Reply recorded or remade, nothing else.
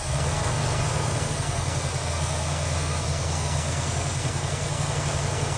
remade